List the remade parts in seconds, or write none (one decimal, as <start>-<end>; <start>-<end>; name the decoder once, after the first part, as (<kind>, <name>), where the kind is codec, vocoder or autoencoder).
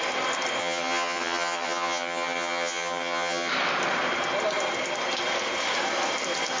0.6-3.5 (vocoder, HiFi-GAN)